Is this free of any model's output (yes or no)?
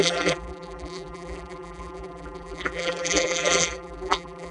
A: no